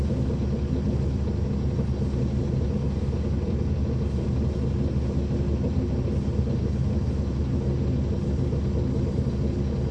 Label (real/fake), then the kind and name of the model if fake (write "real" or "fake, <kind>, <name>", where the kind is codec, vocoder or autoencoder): real